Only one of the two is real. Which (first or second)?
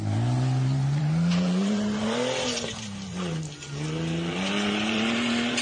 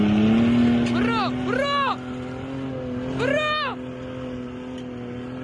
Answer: second